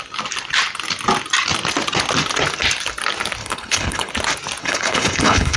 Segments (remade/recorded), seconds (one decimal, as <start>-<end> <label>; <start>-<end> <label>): 0.0-3.4 recorded; 3.4-4.1 remade; 4.1-4.6 recorded; 4.6-5.6 remade